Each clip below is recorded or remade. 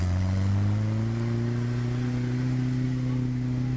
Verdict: recorded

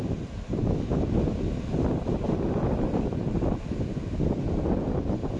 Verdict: recorded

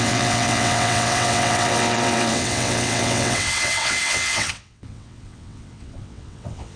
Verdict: remade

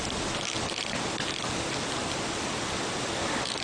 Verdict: recorded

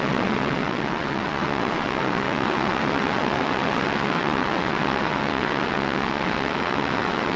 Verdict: remade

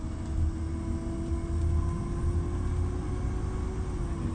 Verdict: recorded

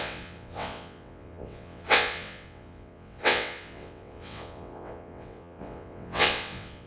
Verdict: remade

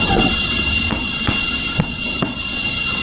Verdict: remade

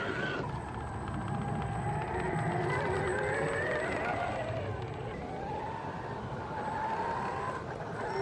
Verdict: recorded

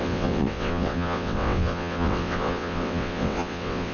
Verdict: remade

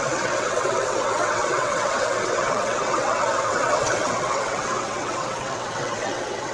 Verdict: remade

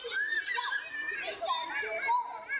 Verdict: recorded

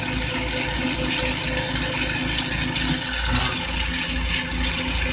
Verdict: recorded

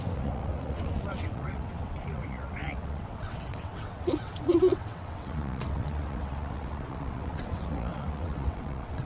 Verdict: remade